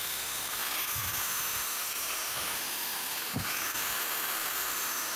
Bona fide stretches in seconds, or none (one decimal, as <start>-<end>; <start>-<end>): none